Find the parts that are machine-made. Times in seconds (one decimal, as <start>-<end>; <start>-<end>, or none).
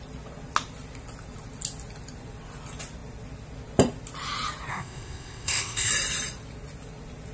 4.7-5.9